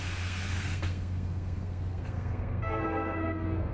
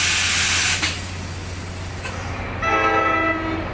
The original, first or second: second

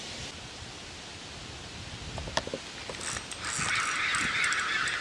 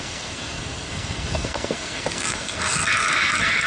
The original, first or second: first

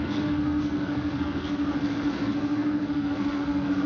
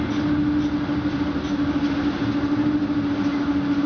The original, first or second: second